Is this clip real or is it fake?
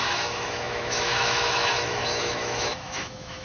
fake